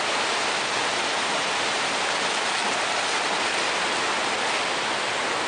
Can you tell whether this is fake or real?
real